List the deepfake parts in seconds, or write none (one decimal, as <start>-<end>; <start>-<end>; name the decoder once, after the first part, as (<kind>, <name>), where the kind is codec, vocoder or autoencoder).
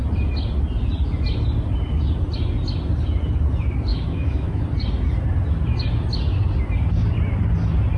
3.9-4.6 (autoencoder, DAC-VAE)